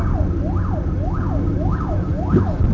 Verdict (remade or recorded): recorded